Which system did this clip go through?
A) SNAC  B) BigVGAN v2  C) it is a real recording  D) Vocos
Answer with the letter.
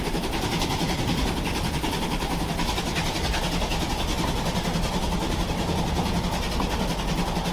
C